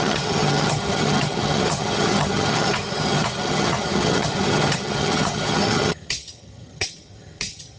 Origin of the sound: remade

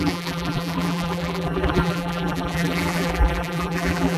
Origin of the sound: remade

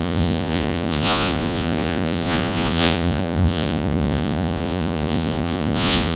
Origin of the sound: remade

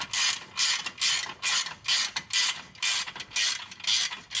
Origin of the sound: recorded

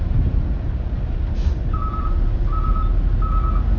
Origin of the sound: recorded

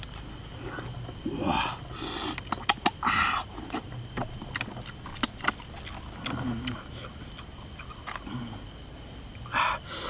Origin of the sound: recorded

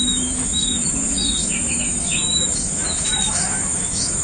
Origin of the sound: remade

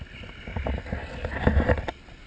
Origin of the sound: recorded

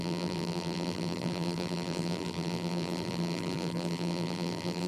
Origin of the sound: remade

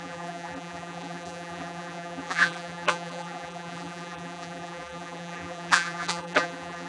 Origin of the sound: remade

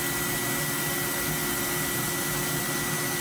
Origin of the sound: recorded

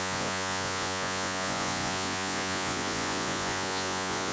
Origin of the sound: remade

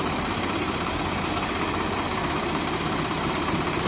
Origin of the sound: remade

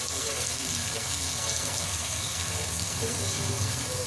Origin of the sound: remade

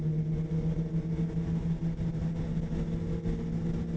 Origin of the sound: recorded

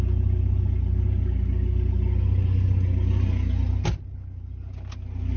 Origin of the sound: recorded